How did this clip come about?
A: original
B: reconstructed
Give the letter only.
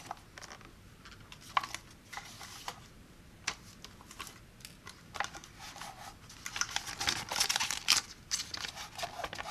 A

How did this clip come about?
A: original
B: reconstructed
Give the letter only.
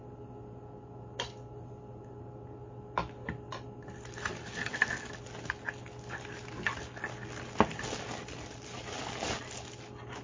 A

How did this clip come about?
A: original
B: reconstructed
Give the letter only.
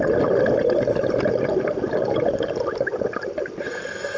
A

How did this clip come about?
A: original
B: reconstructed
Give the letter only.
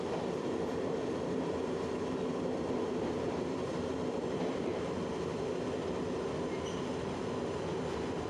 A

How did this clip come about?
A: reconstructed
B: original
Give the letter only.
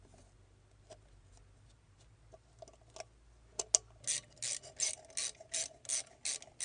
B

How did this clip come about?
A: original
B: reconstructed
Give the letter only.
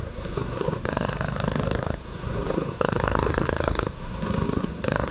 B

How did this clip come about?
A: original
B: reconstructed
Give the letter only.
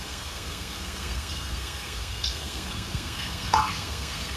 B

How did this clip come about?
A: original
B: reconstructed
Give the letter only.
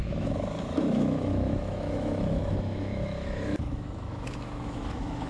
B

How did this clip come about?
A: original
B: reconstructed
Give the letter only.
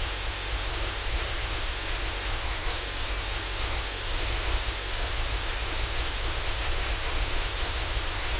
B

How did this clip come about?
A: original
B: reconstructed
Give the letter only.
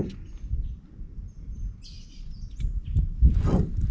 B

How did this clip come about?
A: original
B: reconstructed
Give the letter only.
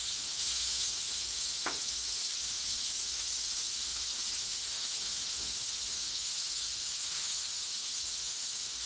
B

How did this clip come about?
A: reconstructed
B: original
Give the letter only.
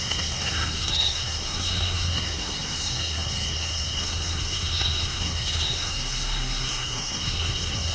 A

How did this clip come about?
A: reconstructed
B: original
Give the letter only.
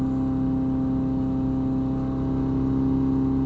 B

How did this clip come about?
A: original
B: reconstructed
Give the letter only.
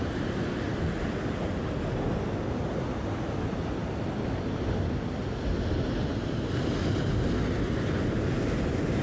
A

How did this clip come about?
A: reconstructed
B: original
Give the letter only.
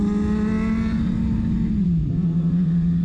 B